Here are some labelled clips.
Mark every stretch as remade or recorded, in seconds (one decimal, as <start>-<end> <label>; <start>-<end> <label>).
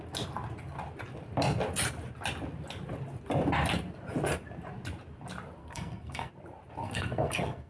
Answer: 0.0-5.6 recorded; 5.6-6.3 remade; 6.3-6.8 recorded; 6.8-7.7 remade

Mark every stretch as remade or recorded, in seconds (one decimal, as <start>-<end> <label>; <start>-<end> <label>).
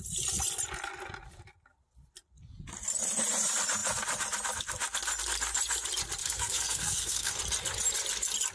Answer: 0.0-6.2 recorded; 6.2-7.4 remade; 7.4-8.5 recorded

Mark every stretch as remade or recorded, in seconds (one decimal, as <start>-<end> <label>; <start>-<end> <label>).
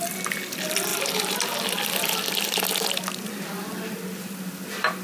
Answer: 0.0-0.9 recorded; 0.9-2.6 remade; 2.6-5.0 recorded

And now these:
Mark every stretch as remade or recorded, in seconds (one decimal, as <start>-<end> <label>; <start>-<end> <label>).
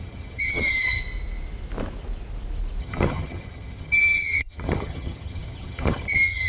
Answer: 0.0-1.0 remade; 1.0-2.8 recorded; 2.8-6.5 remade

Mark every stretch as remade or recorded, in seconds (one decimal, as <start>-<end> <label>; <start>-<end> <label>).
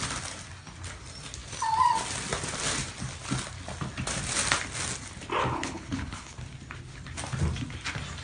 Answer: 0.0-5.5 recorded; 5.5-6.3 remade; 6.3-8.2 recorded